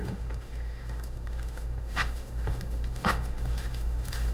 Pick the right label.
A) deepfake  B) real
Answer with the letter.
A